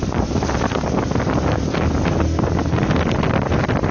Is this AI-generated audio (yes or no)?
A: no